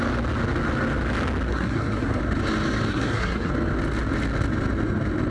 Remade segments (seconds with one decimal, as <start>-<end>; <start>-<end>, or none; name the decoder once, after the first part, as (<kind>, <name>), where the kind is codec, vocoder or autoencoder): 1.5-2.2 (codec, SNAC); 2.9-3.5